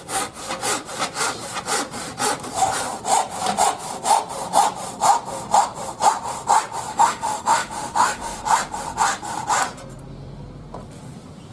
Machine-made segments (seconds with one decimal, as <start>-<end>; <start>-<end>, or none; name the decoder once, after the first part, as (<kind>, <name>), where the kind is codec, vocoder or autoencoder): 6.9-8.4 (autoencoder, DAC-VAE)